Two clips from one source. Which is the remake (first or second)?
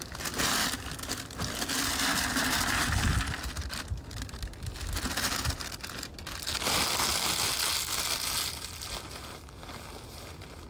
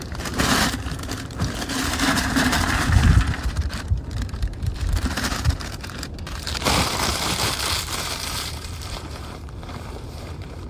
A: second